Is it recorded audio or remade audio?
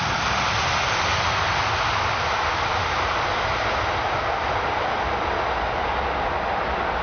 recorded